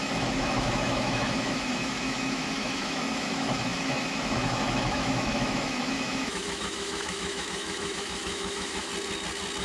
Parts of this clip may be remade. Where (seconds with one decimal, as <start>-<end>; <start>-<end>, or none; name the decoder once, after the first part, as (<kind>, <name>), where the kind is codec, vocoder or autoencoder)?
0.0-8.9 (autoencoder, DAC-VAE)